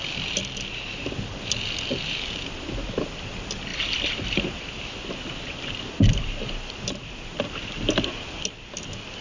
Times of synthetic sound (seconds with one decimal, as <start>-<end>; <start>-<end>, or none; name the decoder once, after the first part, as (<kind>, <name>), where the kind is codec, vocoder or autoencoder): 3.7-5.8 (vocoder, BigVGAN v2)